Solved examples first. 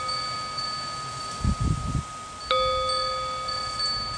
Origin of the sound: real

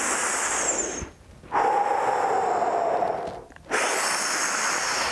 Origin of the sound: real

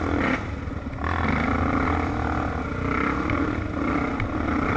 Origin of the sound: fake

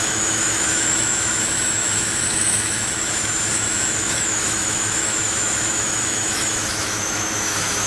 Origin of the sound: fake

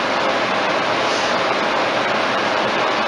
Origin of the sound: fake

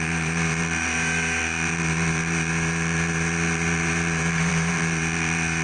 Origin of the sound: fake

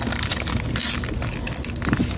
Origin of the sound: real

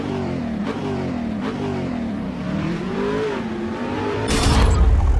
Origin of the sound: fake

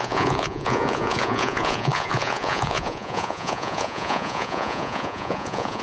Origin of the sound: fake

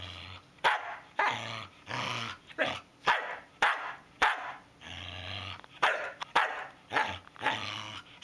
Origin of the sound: real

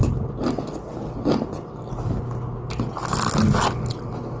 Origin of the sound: real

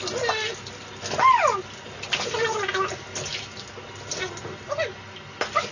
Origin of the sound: real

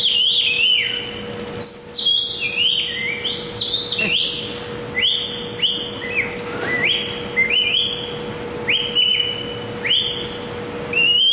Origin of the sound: real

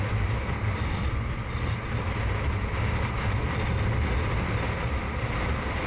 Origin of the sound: real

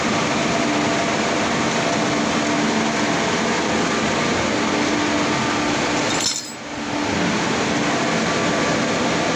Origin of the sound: real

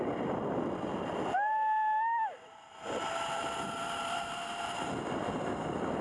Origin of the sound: real